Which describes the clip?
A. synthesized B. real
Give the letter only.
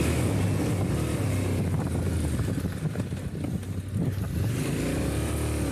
B